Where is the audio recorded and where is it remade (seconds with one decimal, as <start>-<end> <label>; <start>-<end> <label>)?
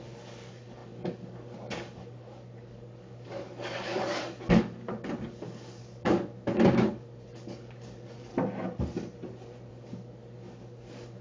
0.0-8.3 remade; 8.3-9.7 recorded; 9.7-11.2 remade